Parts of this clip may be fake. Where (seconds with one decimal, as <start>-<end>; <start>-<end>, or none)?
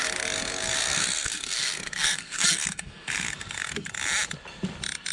0.8-3.9